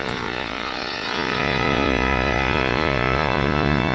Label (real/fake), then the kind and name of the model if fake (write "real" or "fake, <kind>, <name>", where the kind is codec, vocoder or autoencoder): fake, vocoder, Vocos